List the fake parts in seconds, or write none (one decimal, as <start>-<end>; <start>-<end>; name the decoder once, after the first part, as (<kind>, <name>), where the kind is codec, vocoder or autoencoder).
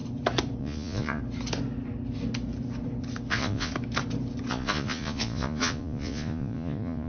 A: 0.6-1.2 (vocoder, Vocos); 3.3-3.7; 4.5-7.1